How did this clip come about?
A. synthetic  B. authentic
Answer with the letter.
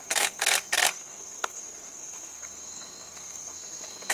A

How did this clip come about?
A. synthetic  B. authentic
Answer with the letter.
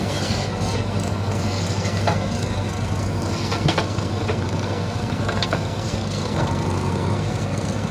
A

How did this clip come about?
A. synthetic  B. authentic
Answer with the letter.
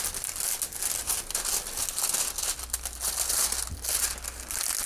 B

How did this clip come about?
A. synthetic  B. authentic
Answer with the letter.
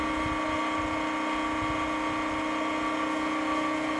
B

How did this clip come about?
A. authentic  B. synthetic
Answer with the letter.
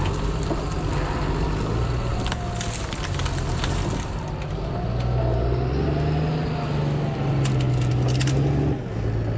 A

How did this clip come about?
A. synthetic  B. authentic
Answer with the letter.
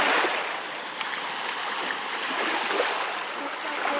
B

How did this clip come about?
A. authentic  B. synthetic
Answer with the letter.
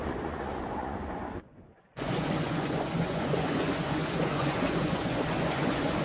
B